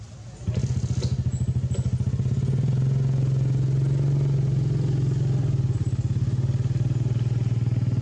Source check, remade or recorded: recorded